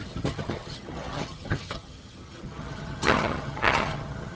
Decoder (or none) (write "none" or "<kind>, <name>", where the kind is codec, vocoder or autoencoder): vocoder, HiFi-GAN